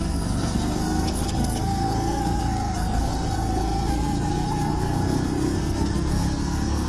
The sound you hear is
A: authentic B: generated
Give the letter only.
B